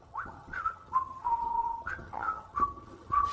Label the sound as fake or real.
fake